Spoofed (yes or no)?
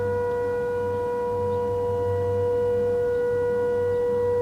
no